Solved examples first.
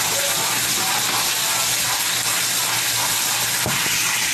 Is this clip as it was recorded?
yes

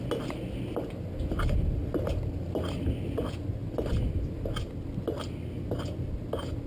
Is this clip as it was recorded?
yes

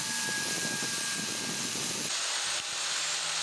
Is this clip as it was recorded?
yes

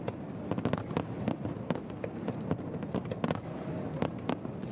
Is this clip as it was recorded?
yes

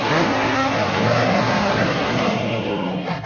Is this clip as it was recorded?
no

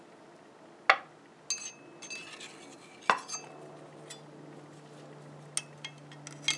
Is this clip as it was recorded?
yes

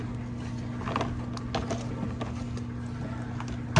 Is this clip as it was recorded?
yes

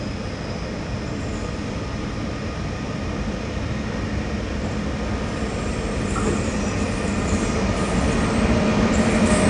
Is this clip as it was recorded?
yes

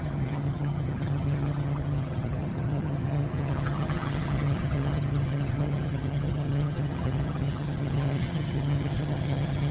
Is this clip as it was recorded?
no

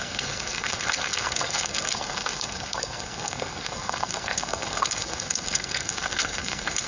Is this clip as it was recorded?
no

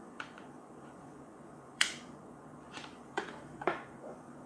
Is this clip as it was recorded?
no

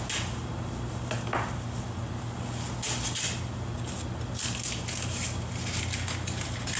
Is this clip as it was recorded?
yes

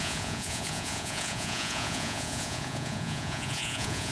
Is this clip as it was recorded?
no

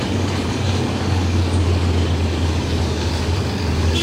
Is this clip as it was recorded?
no